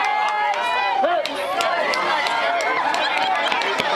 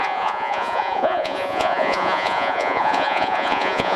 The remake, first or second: second